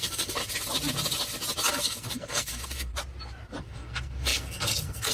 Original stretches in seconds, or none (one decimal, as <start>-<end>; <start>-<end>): 0.4-1.7; 2.9-3.6